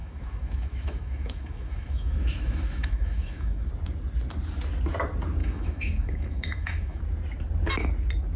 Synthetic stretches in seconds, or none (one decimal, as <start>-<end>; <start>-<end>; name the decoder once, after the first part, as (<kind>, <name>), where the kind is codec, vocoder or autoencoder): 0.0-3.7 (autoencoder, DAC-VAE); 5.4-7.0